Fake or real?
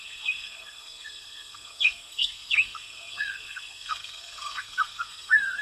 fake